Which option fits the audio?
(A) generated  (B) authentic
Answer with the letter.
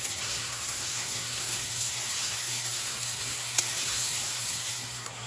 A